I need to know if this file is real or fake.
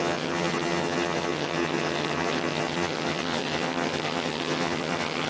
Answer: fake